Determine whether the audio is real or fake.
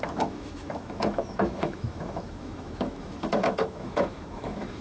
fake